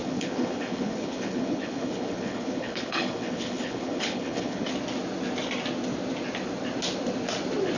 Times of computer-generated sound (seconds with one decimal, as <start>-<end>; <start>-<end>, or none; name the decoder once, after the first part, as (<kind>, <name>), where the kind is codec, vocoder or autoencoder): 0.0-4.7 (codec, HILCodec)